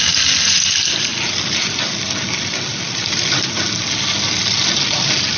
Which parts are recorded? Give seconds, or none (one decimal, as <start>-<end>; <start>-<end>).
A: 0.0-5.4